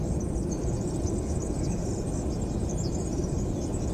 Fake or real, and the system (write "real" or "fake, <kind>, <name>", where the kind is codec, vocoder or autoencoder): real